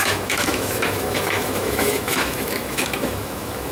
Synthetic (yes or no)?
yes